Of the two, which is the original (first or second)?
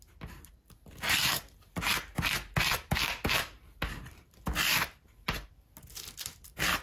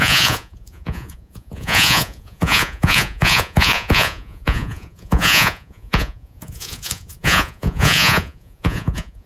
first